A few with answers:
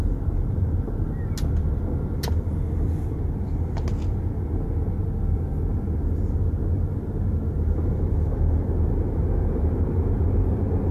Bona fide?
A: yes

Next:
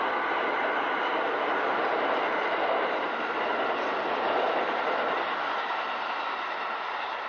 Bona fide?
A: yes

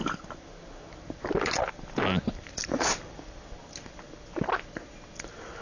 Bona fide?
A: yes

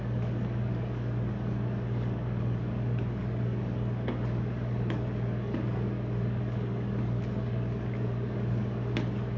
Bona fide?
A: no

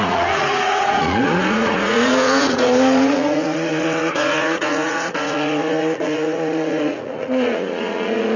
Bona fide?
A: no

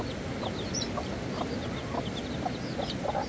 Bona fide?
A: yes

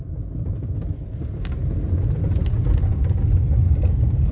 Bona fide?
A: yes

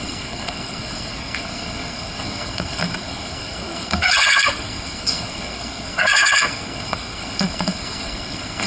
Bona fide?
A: no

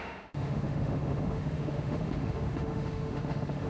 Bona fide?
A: no